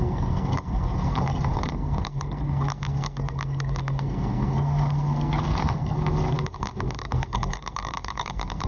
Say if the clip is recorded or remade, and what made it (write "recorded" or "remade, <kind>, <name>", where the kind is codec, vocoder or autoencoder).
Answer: remade, codec, SNAC